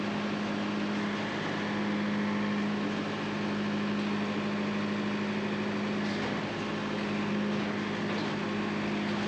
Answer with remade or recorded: recorded